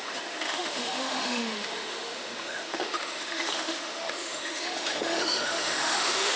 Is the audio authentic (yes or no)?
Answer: no